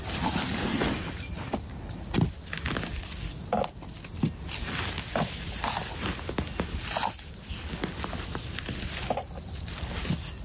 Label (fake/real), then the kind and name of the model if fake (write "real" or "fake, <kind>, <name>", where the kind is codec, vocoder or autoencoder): real